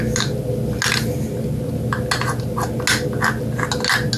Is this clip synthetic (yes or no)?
no